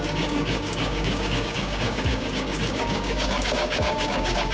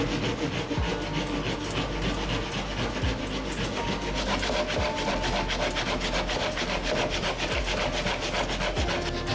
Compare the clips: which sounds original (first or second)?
second